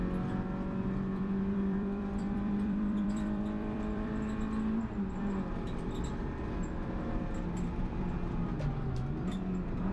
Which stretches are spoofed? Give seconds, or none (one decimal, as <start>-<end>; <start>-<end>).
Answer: 1.1-4.1